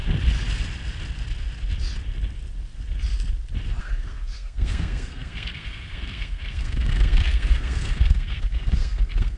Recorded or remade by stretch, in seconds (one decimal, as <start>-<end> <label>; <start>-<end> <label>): 0.0-3.8 recorded; 3.8-9.4 remade